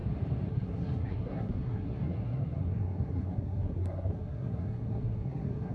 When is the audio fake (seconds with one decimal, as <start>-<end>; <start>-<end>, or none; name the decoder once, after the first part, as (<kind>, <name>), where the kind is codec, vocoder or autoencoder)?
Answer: 0.5-5.7 (codec, SNAC)